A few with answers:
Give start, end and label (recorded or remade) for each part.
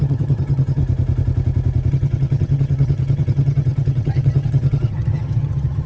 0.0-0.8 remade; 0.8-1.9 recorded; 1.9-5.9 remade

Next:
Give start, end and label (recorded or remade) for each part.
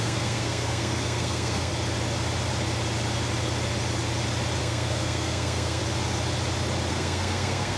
0.0-1.7 remade; 1.7-4.6 recorded; 4.6-5.8 remade; 5.8-6.9 recorded; 6.9-7.8 remade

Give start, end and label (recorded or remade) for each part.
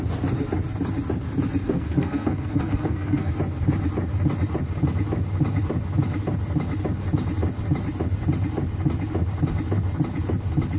0.0-1.6 recorded; 1.6-3.3 remade; 3.3-10.8 recorded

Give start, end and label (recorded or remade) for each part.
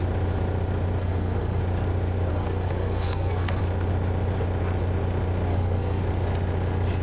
0.0-1.0 recorded; 1.0-1.6 remade; 1.6-2.3 recorded; 2.3-3.6 remade; 3.6-5.5 recorded; 5.5-6.0 remade; 6.0-7.0 recorded